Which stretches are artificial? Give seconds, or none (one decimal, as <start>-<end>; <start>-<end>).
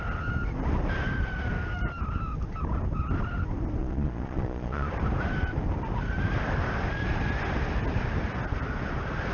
3.8-4.9